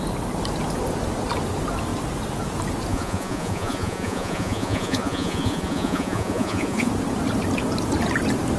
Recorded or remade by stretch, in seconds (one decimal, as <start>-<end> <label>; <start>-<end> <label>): 0.0-2.9 recorded; 2.9-6.9 remade; 6.9-8.6 recorded